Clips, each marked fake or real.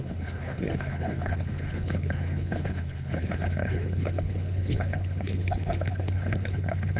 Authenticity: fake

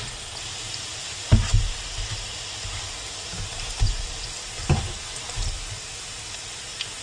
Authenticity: real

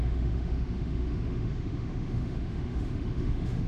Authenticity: fake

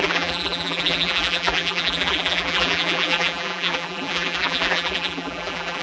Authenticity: fake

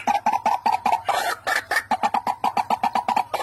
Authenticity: real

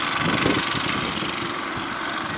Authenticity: real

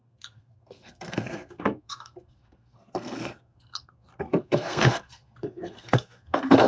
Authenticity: fake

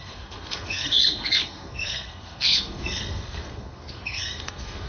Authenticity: fake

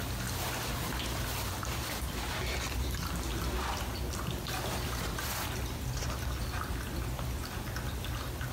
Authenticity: real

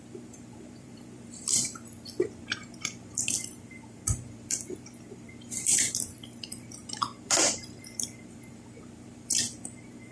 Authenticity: fake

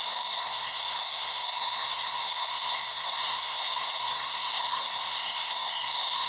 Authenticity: fake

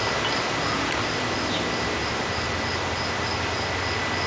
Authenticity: real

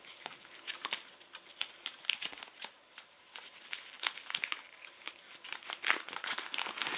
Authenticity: real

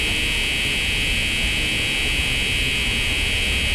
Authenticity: real